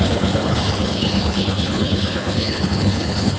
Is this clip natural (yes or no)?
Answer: no